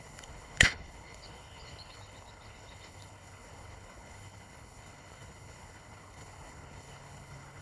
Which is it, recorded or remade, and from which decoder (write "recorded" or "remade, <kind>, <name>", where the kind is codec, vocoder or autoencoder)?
remade, codec, HILCodec